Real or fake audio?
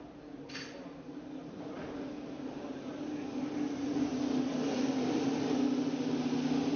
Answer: real